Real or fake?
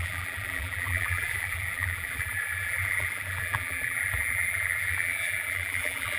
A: fake